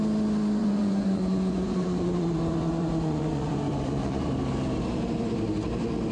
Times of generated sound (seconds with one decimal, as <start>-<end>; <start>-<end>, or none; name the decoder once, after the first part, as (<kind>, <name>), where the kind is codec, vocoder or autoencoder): 0.6-4.3 (vocoder, Vocos)